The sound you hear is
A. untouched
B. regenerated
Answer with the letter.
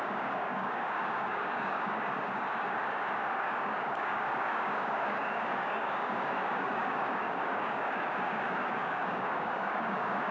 B